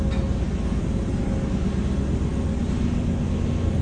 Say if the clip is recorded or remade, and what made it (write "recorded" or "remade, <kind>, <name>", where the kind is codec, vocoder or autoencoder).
recorded